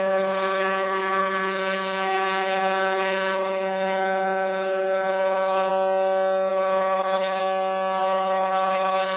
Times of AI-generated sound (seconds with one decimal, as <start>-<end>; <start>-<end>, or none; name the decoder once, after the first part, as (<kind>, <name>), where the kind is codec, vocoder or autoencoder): 0.0-5.7 (codec, HILCodec); 6.5-7.4; 8.0-9.2